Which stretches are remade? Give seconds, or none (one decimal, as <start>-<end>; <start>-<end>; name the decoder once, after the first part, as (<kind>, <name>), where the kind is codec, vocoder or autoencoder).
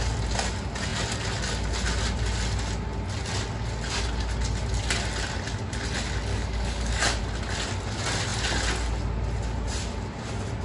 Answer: 6.3-7.2 (codec, DAC)